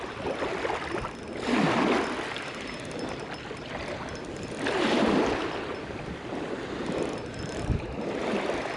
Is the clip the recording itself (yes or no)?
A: yes